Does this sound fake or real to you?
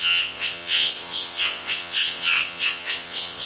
fake